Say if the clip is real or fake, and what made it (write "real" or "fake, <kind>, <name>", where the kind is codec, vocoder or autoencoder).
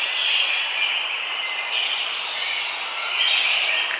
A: real